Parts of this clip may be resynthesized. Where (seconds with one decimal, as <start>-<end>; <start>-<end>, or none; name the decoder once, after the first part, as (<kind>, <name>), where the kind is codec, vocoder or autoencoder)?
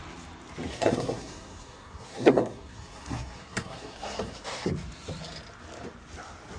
0.7-4.7 (codec, SNAC)